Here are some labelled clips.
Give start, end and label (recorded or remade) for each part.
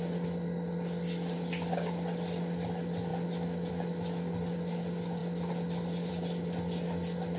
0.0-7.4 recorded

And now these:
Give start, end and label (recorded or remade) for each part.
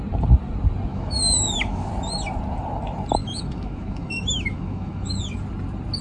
0.0-0.9 recorded; 0.9-1.9 remade; 1.9-3.2 recorded; 3.2-5.2 remade; 5.2-6.0 recorded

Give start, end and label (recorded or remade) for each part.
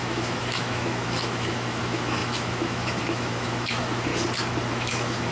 0.0-4.1 remade; 4.1-4.7 recorded; 4.7-5.3 remade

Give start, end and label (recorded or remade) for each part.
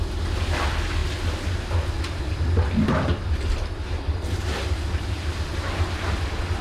0.0-6.6 recorded